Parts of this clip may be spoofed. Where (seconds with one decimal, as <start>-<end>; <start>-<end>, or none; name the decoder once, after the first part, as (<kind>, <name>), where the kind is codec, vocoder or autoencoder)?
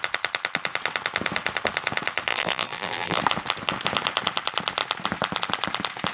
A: 2.3-3.2 (vocoder, BigVGAN v2)